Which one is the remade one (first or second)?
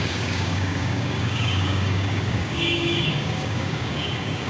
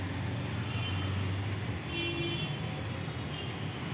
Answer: first